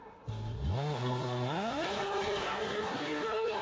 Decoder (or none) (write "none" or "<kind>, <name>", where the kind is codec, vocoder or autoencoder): codec, SNAC